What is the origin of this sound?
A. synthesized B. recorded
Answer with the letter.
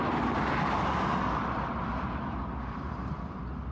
B